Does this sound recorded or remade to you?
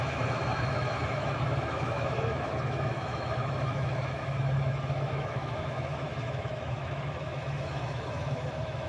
remade